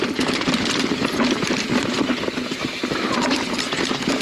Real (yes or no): yes